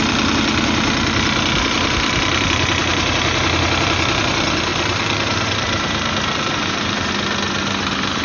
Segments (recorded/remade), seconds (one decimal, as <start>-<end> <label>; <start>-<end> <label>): 0.0-4.7 recorded; 4.7-7.1 remade; 7.1-8.2 recorded